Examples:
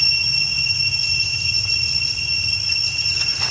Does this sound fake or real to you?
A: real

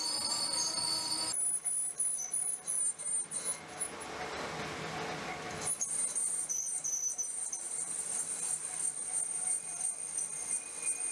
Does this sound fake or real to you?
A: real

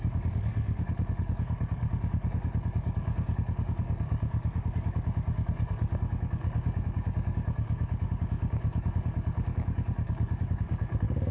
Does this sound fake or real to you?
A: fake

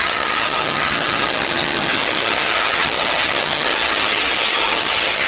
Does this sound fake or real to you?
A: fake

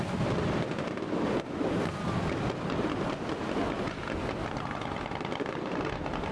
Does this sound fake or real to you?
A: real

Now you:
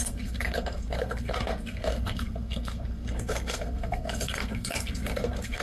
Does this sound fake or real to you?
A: fake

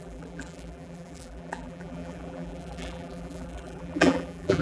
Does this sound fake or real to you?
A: fake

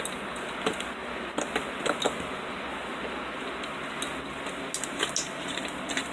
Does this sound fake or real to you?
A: real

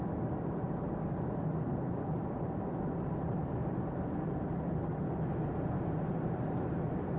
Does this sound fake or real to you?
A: real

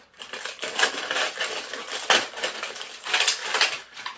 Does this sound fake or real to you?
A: real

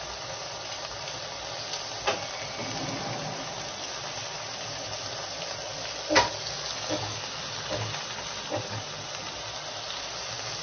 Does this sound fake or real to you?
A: real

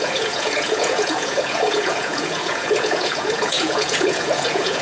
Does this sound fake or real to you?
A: fake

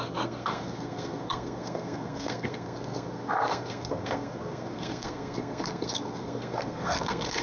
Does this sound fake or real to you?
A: fake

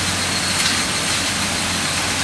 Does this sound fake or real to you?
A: real